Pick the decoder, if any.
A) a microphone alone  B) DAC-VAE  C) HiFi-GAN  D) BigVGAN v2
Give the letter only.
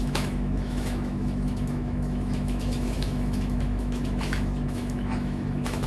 B